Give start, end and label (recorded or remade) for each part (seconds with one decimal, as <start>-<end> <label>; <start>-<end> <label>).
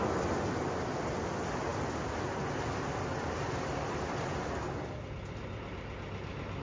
0.0-6.6 recorded